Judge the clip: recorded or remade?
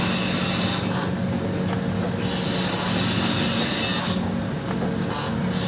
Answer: recorded